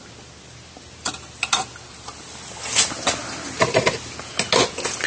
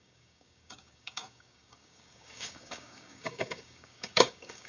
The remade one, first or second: second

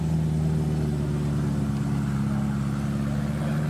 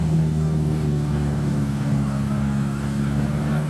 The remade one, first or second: second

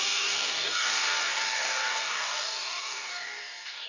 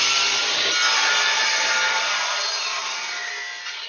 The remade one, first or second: first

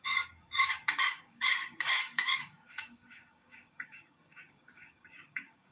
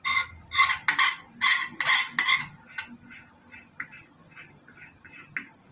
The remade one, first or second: first